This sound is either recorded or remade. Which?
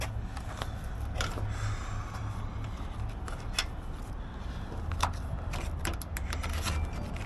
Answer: recorded